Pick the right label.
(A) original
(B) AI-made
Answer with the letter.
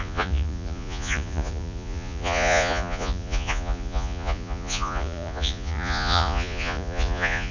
B